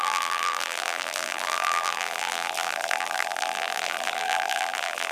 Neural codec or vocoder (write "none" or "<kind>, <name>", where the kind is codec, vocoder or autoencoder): vocoder, BigVGAN v2